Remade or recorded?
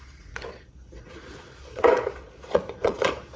remade